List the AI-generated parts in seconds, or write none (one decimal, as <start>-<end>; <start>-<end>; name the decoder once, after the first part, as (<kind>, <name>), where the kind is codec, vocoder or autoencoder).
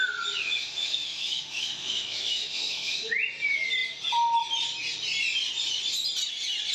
0.4-3.1 (autoencoder, DAC-VAE)